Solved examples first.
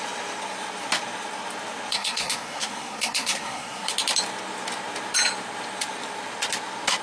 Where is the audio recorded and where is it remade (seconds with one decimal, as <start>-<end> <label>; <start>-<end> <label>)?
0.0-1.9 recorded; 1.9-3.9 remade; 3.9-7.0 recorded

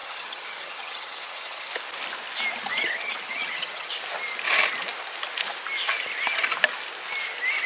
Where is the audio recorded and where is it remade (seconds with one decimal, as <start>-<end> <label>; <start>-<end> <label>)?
0.0-1.7 remade; 1.7-2.6 recorded; 2.6-3.9 remade; 3.9-7.7 recorded

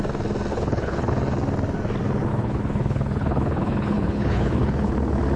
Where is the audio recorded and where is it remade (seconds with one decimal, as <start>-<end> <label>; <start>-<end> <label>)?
0.0-0.5 recorded; 0.5-1.1 remade; 1.1-2.3 recorded; 2.3-4.9 remade; 4.9-5.4 recorded

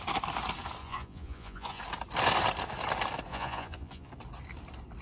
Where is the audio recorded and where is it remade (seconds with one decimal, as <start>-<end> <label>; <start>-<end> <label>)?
0.0-0.8 recorded; 0.8-1.8 remade; 1.8-3.3 recorded; 3.3-4.1 remade; 4.1-5.0 recorded